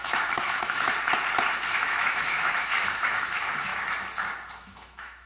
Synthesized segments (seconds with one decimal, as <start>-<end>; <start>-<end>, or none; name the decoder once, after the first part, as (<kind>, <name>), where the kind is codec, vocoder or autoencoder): 0.0-0.9 (autoencoder, DAC-VAE); 1.7-3.7; 4.6-5.3